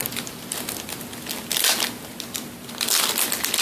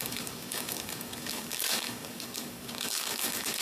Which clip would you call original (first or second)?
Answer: first